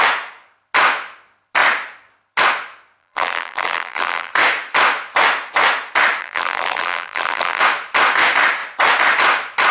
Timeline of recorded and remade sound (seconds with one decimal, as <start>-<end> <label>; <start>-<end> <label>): 0.0-3.0 recorded; 3.0-4.3 remade; 4.3-6.2 recorded; 6.2-7.6 remade; 7.6-9.7 recorded